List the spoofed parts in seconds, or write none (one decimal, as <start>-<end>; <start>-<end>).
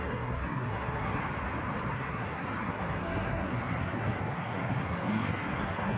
0.0-1.2; 1.9-6.0